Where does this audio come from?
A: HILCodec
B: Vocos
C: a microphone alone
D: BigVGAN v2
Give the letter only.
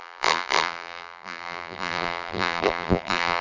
D